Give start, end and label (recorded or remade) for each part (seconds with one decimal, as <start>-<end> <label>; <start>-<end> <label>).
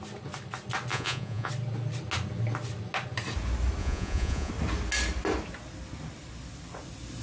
0.0-0.9 recorded; 0.9-1.5 remade; 1.5-3.8 recorded; 3.8-4.5 remade; 4.5-7.2 recorded